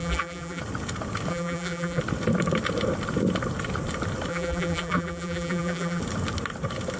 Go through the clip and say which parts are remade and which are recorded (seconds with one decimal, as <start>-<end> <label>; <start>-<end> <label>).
0.0-0.6 remade; 0.6-1.3 recorded; 1.3-2.0 remade; 2.0-4.3 recorded; 4.3-6.0 remade; 6.0-7.0 recorded